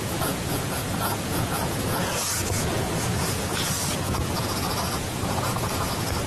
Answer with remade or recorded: remade